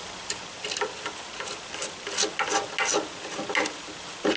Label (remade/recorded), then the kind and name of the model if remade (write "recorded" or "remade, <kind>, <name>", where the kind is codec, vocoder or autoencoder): recorded